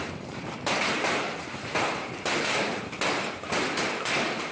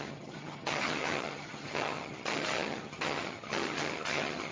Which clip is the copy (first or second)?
second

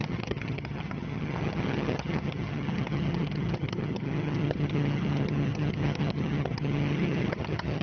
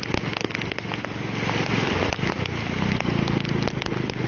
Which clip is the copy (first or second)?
first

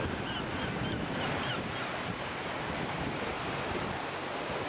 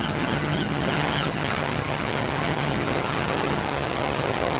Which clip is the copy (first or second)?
second